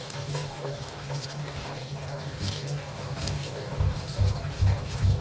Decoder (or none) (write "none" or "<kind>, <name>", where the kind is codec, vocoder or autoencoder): codec, DAC